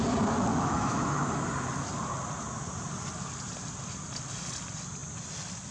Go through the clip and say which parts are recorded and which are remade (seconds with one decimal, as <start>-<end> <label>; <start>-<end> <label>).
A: 0.0-0.5 recorded; 0.5-1.3 remade; 1.3-5.7 recorded